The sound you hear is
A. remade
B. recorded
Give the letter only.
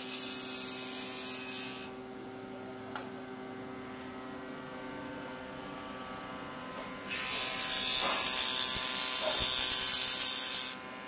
B